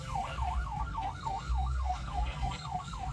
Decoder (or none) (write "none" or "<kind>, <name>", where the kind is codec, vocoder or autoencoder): codec, SNAC